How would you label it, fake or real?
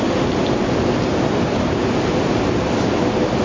real